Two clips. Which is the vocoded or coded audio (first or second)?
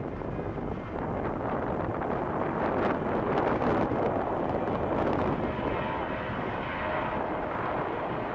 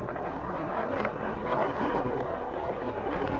second